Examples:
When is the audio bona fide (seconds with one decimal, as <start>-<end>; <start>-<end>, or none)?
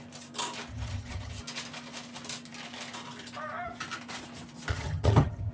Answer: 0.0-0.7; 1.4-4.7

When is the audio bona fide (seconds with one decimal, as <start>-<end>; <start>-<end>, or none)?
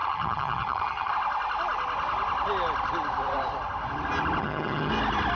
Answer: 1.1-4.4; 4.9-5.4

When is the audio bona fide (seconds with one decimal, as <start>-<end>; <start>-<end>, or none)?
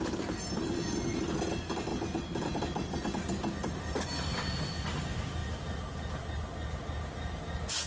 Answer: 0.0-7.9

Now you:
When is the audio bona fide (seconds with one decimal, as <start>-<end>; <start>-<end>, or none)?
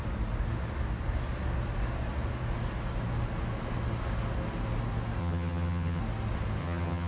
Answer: 0.0-5.2; 6.0-6.6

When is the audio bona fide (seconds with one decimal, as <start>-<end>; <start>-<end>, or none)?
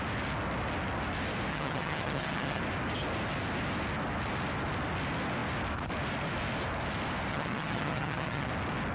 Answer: 0.0-1.5; 2.6-7.3; 8.5-8.9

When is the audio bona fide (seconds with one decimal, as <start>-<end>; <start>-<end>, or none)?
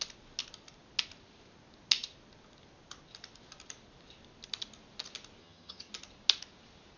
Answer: 0.0-5.4; 5.9-7.0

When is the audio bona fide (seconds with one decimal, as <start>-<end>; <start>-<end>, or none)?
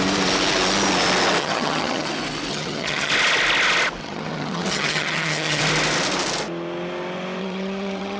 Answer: 0.0-1.4; 2.1-2.5; 3.1-4.0; 5.6-7.4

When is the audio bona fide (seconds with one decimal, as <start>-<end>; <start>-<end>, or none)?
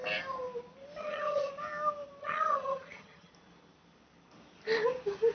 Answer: 0.0-1.0; 1.5-2.2; 3.3-5.3